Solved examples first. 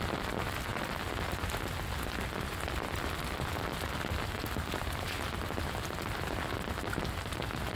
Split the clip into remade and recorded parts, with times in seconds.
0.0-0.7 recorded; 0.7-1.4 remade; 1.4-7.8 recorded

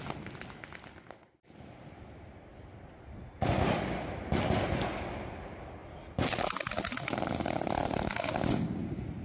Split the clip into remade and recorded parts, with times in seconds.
0.0-2.5 recorded; 2.5-3.2 remade; 3.2-5.8 recorded; 5.8-6.3 remade; 6.3-9.2 recorded

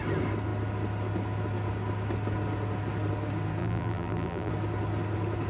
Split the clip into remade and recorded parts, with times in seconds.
0.0-3.6 recorded; 3.6-4.5 remade; 4.5-5.5 recorded